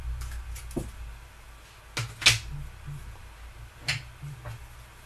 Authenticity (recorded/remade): recorded